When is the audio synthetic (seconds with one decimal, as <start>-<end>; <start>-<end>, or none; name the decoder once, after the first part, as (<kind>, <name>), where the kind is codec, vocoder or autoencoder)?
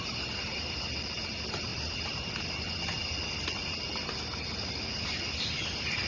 none